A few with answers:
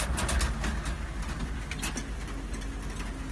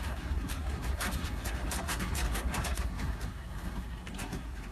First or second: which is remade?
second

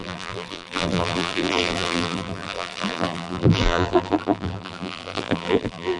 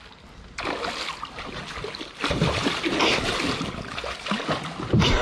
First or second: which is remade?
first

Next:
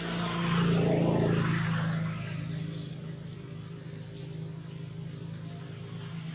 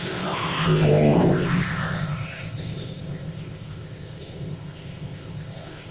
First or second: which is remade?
second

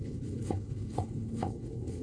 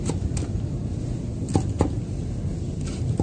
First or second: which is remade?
first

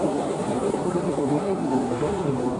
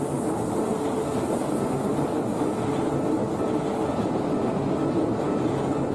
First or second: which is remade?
first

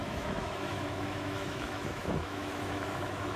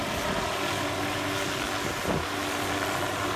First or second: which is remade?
first